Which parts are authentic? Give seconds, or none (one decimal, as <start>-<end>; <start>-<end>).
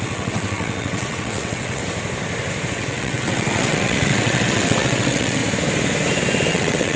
1.8-2.7; 5.4-6.5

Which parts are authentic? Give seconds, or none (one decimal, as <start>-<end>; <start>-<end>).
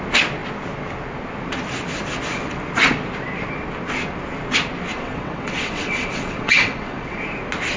0.0-4.9; 7.2-7.8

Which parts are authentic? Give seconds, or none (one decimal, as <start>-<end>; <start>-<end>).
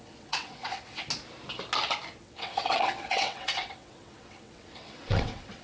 1.0-2.2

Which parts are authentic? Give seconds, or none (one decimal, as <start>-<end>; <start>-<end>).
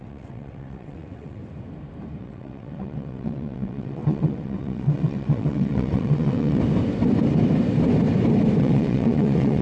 1.4-2.2; 6.6-8.6